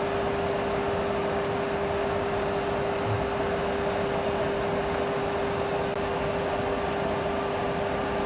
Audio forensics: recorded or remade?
recorded